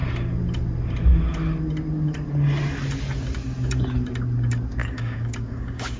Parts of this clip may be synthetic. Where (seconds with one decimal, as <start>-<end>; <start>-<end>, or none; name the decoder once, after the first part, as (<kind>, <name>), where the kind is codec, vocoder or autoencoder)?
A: 4.8-6.0 (codec, DAC)